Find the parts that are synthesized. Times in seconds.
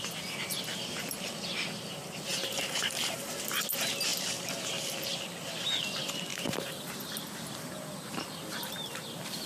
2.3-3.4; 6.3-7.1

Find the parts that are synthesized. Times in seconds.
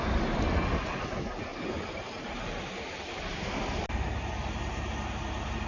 1.5-4.3